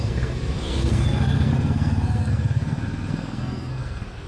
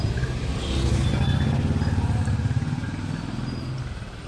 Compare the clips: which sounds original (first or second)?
second